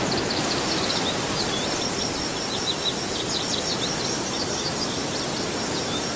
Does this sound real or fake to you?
real